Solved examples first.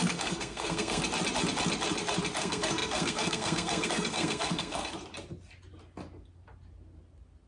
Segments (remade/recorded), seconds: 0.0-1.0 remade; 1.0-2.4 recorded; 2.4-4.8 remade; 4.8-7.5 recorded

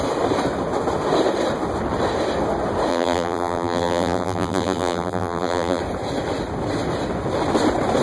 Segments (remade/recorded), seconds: 0.0-2.9 recorded; 2.9-5.8 remade; 5.8-8.0 recorded

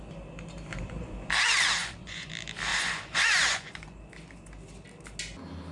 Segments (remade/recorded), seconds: 0.0-0.7 recorded; 0.7-1.3 remade; 1.3-1.8 recorded; 1.8-2.3 remade; 2.3-2.7 recorded; 2.7-4.0 remade; 4.0-5.7 recorded

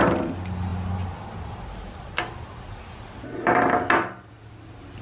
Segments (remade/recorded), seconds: 0.0-5.0 recorded

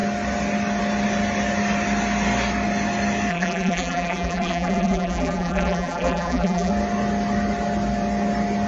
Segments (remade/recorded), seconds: 0.0-3.3 recorded; 3.3-6.7 remade; 6.7-8.7 recorded

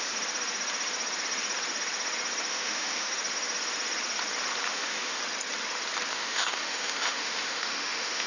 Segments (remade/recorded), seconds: 0.0-2.5 recorded; 2.5-3.1 remade; 3.1-4.7 recorded; 4.7-5.2 remade; 5.2-6.1 recorded; 6.1-8.3 remade